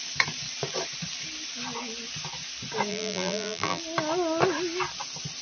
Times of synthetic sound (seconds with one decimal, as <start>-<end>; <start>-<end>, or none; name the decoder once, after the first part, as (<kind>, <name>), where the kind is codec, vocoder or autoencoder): 2.9-3.8 (vocoder, BigVGAN v2)